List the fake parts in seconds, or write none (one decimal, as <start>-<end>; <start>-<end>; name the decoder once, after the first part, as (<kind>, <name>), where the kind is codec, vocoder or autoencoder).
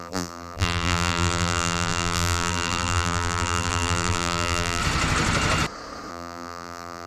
0.0-4.8 (vocoder, BigVGAN v2); 6.1-7.1